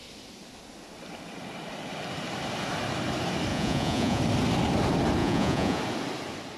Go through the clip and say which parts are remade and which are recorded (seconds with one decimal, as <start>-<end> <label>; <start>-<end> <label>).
0.0-3.5 recorded; 3.5-4.2 remade; 4.2-5.2 recorded; 5.2-5.8 remade; 5.8-6.6 recorded